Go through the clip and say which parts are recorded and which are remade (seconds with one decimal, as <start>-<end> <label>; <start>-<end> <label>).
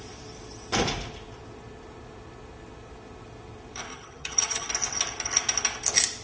0.0-3.9 recorded; 3.9-4.7 remade; 4.7-6.2 recorded